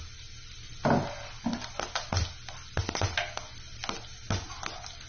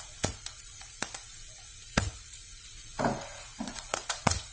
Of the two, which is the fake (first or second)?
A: second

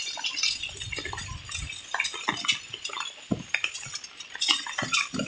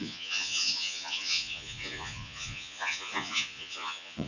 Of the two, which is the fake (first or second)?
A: second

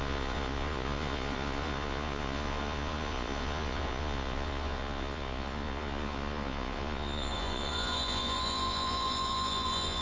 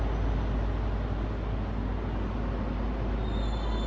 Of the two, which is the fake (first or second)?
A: first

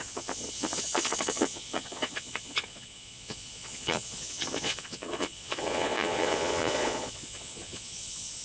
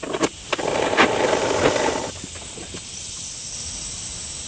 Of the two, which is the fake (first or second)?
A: first